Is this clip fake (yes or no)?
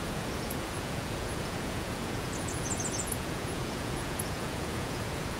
yes